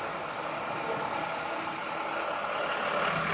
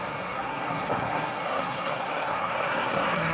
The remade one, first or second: second